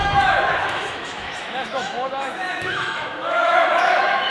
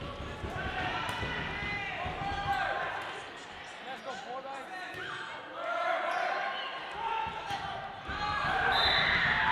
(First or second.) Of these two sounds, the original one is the second